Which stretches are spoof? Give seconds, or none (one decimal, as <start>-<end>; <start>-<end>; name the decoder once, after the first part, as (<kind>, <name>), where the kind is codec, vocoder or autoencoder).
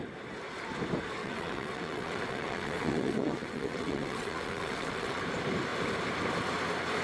1.2-5.2 (vocoder, WaveNeXt)